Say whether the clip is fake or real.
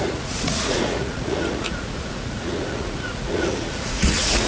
fake